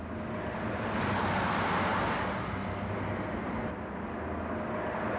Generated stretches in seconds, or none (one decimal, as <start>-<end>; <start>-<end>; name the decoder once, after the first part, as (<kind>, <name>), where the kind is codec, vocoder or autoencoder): none